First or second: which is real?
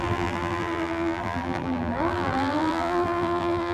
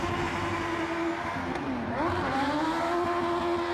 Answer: second